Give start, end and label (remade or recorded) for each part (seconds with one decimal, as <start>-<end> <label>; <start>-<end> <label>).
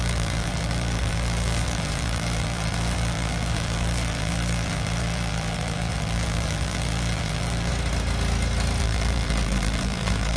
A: 0.0-7.7 remade; 7.7-8.8 recorded; 8.8-10.4 remade